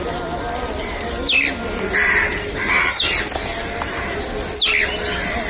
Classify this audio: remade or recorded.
recorded